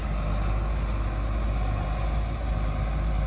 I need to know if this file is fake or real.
real